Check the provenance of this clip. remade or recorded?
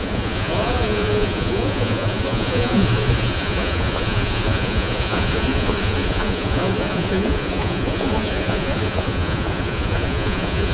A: remade